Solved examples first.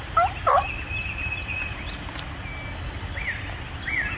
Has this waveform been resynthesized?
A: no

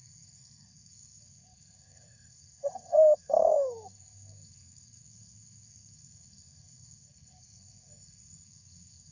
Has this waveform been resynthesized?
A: yes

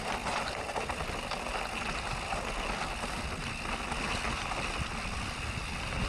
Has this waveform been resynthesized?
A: no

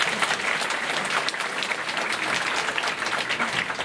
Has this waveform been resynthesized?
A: no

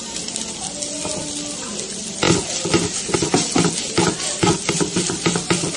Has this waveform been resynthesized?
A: no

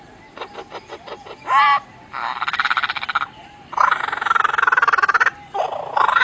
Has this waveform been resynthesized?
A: no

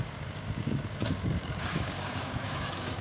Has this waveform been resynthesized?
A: yes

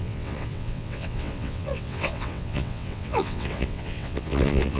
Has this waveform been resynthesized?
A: yes